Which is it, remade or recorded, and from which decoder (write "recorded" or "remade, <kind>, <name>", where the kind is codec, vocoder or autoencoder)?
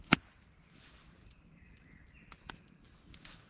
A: recorded